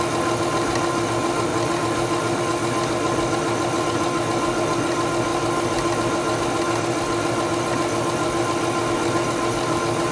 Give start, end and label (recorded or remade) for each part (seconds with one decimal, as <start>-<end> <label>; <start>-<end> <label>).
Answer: 0.0-10.1 recorded